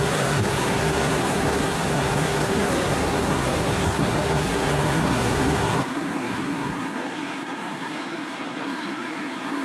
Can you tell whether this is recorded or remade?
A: remade